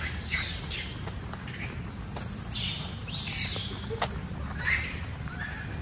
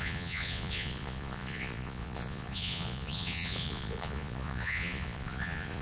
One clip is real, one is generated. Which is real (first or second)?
first